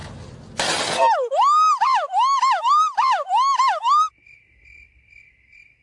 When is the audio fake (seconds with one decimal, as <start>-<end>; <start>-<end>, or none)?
none